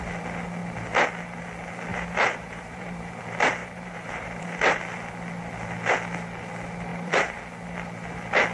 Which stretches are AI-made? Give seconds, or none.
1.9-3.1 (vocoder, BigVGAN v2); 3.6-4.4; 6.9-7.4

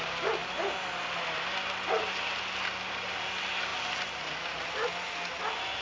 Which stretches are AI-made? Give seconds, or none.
none

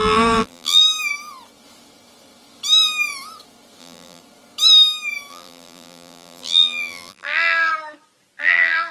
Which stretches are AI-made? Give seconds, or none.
0.0-0.8 (vocoder, BigVGAN v2); 3.8-4.2; 5.3-7.7; 8.4-8.9